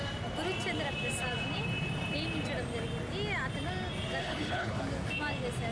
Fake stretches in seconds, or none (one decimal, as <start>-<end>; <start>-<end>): 4.2-4.8